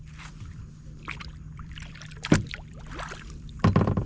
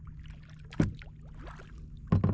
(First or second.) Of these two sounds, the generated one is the first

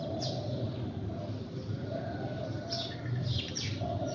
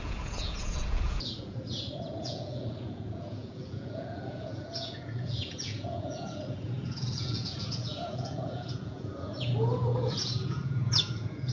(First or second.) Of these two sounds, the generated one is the second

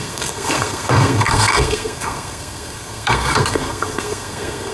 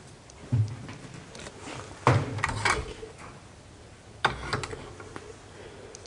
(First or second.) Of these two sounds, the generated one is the first